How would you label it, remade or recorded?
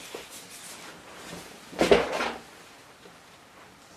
recorded